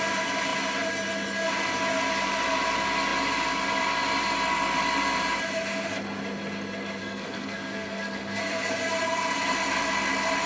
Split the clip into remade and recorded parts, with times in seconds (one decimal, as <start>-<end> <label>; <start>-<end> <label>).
0.0-7.0 recorded; 7.0-8.4 remade; 8.4-10.5 recorded